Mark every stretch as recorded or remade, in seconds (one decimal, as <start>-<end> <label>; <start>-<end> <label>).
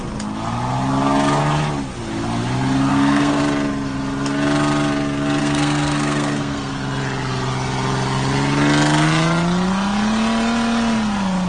0.0-2.9 recorded; 2.9-3.4 remade; 3.4-5.4 recorded; 5.4-6.7 remade; 6.7-11.5 recorded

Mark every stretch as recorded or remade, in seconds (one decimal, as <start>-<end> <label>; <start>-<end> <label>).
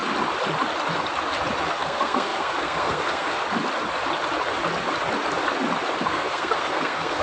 0.0-1.7 recorded; 1.7-3.4 remade; 3.4-6.1 recorded; 6.1-7.2 remade